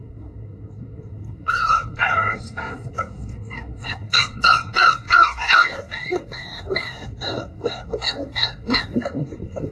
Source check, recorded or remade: remade